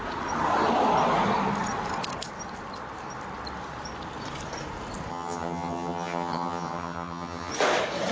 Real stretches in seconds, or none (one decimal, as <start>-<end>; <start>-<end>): 0.0-5.1; 7.5-8.1